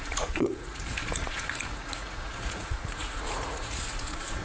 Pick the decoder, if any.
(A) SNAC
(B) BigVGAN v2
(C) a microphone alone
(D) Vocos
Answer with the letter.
D